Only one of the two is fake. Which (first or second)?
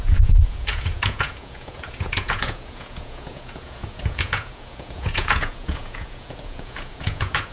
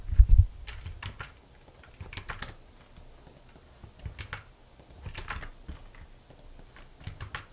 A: first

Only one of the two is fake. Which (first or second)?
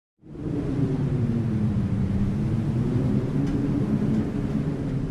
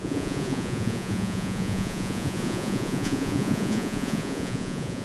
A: second